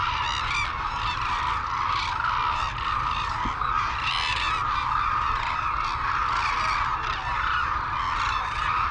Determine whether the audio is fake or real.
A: real